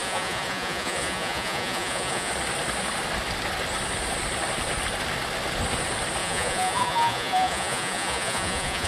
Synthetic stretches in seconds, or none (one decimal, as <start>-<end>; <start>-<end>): 0.0-2.3; 6.2-8.9